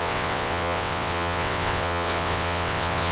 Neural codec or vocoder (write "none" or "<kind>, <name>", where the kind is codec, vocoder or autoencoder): vocoder, WaveNeXt